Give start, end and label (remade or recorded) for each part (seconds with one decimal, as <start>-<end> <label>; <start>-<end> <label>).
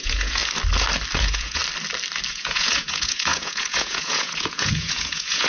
0.0-0.4 remade; 0.4-1.2 recorded; 1.2-1.6 remade; 1.6-2.3 recorded; 2.3-5.5 remade